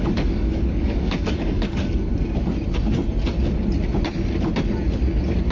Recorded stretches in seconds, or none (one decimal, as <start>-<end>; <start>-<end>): 2.1-5.5